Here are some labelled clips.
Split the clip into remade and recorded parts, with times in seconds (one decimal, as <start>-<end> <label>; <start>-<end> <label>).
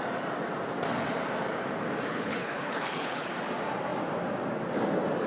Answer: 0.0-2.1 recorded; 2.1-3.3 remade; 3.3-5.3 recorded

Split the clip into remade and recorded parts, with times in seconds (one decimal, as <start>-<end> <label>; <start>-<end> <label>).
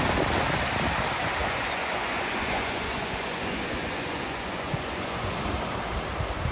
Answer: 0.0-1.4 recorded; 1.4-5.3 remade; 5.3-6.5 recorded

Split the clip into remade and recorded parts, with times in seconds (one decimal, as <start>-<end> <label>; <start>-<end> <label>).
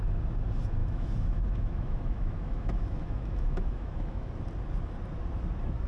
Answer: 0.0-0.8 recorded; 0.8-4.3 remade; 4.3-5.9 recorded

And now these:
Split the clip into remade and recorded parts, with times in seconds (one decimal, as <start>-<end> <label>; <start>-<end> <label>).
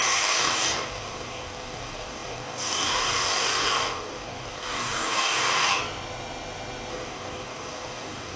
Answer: 0.0-5.8 remade; 5.8-6.9 recorded; 6.9-8.4 remade